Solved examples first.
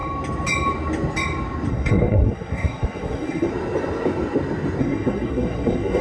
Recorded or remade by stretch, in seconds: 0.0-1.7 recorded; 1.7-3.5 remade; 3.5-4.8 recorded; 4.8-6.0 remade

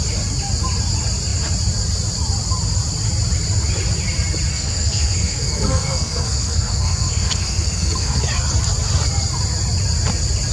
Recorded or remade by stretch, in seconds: 0.0-4.5 recorded; 4.5-8.2 remade; 8.2-10.5 recorded